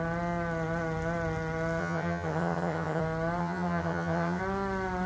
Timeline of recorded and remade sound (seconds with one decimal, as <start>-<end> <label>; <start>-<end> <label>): 0.0-1.8 recorded; 1.8-3.0 remade; 3.0-3.4 recorded; 3.4-4.4 remade; 4.4-5.1 recorded